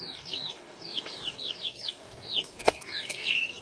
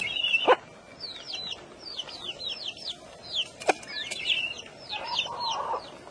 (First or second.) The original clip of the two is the second